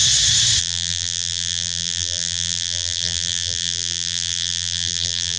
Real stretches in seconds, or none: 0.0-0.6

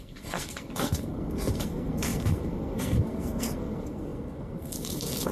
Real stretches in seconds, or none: none

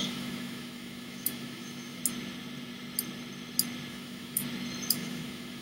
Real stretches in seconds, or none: 2.0-3.9; 4.4-4.9